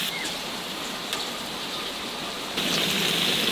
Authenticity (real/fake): fake